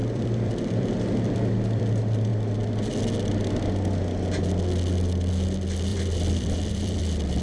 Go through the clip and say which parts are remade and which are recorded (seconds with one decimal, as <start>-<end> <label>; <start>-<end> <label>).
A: 0.0-1.8 remade; 1.8-5.9 recorded; 5.9-7.4 remade